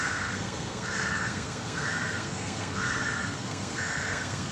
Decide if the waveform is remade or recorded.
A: remade